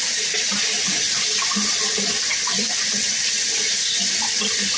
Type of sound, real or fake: real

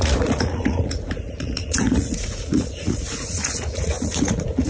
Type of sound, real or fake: fake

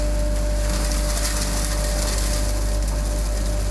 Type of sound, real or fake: real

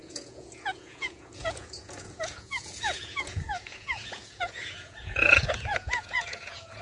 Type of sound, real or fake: fake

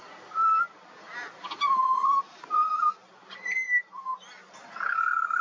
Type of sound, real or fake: real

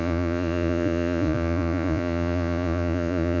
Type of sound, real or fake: fake